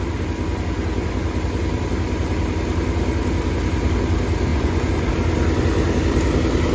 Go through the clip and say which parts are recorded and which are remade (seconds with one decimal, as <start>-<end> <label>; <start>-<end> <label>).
0.0-4.5 recorded; 4.5-5.1 remade; 5.1-6.7 recorded